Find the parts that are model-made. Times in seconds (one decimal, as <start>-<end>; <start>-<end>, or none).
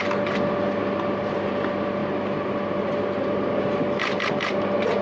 none